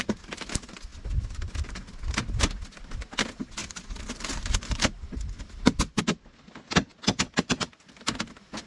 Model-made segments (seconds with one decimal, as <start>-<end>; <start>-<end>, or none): none